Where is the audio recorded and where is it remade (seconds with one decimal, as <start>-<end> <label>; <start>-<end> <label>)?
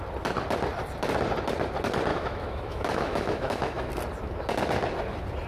0.0-2.1 recorded; 2.1-3.9 remade; 3.9-5.5 recorded